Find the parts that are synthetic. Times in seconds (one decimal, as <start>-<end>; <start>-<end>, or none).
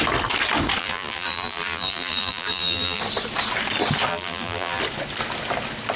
0.8-3.0; 4.1-4.8